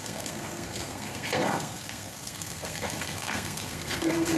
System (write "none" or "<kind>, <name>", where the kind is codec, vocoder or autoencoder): codec, SNAC